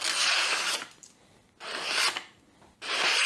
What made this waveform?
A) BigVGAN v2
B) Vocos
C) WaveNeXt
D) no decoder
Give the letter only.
D